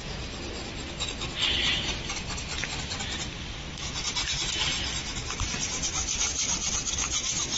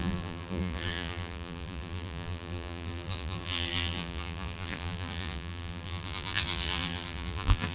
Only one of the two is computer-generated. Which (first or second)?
second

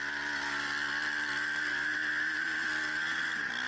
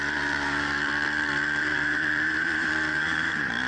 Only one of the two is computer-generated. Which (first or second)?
second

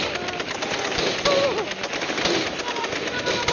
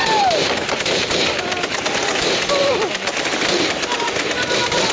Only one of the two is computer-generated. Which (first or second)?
second